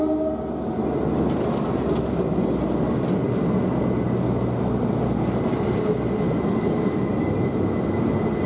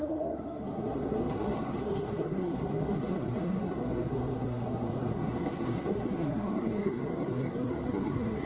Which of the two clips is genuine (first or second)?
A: first